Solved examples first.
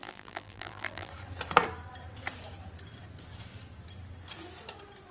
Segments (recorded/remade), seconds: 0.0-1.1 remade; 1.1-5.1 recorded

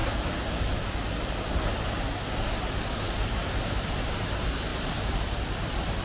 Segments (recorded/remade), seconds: 0.0-3.6 recorded; 3.6-6.0 remade

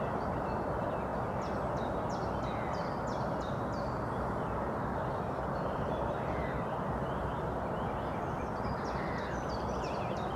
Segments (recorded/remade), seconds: 0.0-1.1 remade; 1.1-5.2 recorded; 5.2-10.4 remade

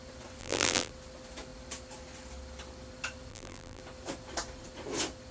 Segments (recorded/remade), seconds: 0.0-0.4 recorded; 0.4-0.9 remade; 0.9-3.3 recorded; 3.3-3.8 remade; 3.8-5.3 recorded